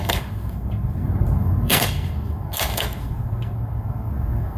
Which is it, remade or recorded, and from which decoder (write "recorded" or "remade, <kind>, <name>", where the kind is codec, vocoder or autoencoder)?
remade, codec, SNAC